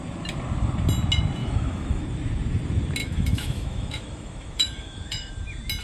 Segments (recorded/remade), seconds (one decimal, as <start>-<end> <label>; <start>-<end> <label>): 0.0-1.4 recorded; 1.4-2.0 remade; 2.0-3.0 recorded; 3.0-5.3 remade; 5.3-5.8 recorded